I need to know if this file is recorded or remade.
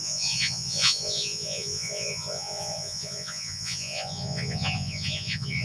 remade